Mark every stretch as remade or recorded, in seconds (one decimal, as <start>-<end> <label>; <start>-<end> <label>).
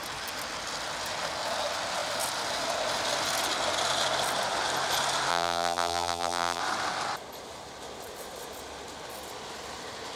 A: 0.0-5.3 recorded; 5.3-6.6 remade; 6.6-10.2 recorded